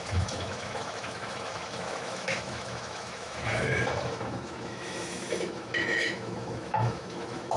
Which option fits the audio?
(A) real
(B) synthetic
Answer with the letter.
B